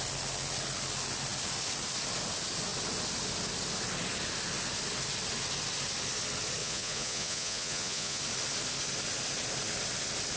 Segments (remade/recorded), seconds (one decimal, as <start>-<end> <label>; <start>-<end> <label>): 0.0-6.6 recorded; 6.6-8.2 remade; 8.2-10.4 recorded